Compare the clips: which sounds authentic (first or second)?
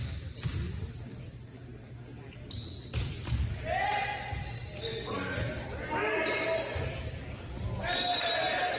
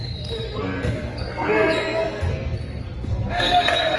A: first